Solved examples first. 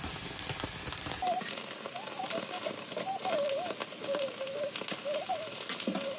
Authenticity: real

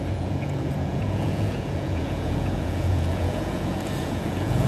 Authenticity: fake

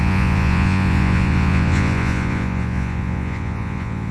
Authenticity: fake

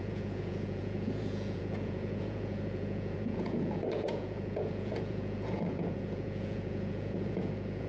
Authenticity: fake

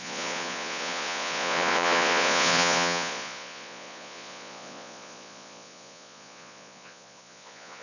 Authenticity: fake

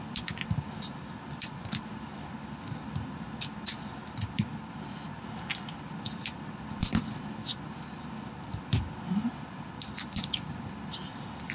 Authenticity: real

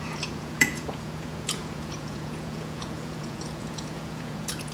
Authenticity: fake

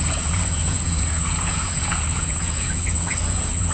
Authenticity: fake